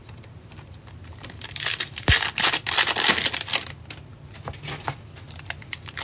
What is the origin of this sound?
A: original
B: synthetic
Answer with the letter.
A